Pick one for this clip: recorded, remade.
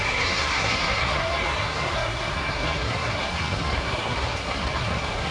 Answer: remade